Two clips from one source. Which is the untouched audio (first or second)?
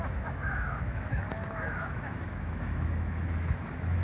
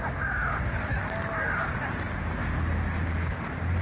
second